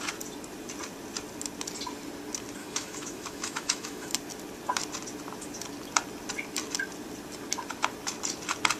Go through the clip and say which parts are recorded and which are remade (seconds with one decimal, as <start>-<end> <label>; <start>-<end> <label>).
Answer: 0.0-2.6 recorded; 2.6-4.1 remade; 4.1-8.8 recorded